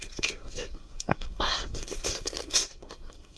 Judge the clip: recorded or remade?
remade